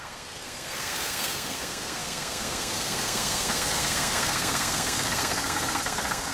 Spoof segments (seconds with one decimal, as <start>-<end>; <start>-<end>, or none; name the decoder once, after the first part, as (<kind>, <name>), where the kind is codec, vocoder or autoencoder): 0.0-6.3 (codec, SNAC)